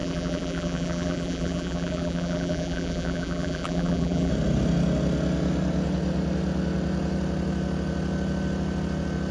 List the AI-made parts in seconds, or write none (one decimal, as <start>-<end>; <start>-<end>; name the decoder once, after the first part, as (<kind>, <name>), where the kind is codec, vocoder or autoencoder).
0.0-4.3 (vocoder, BigVGAN v2)

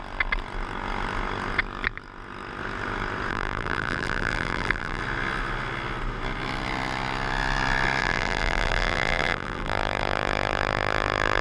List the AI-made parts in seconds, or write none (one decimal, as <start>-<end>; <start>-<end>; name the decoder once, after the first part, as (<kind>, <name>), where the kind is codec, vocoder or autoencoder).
3.3-5.0 (vocoder, BigVGAN v2); 8.0-11.4

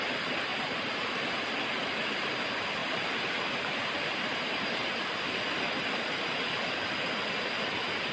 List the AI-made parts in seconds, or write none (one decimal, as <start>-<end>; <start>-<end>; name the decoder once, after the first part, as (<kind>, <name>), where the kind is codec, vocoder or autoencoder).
2.8-5.4 (vocoder, BigVGAN v2)

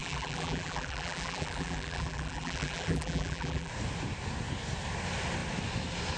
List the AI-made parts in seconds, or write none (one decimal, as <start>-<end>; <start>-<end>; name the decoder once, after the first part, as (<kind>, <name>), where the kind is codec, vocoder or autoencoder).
0.0-3.7 (vocoder, BigVGAN v2)

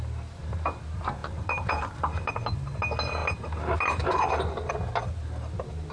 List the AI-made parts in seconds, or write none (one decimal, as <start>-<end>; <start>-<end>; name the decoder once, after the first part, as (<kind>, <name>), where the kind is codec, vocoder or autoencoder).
1.2-2.3 (vocoder, BigVGAN v2)